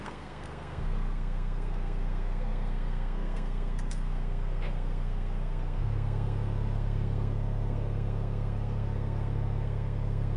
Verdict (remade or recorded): remade